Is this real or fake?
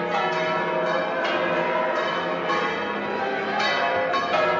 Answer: real